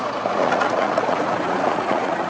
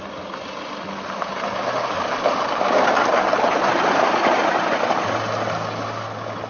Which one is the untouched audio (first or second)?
second